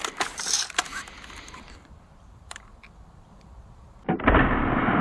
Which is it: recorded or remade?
remade